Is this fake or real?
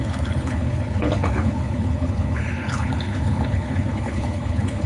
fake